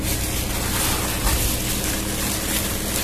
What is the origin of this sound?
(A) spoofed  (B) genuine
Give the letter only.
B